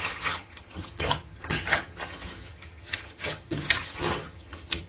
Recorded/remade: remade